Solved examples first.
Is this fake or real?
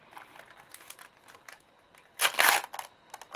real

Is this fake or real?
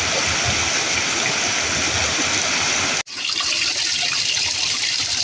real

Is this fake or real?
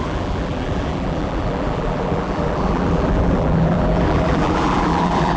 fake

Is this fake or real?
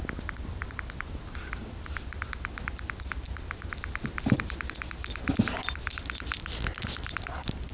real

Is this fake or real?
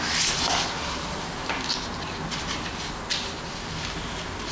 real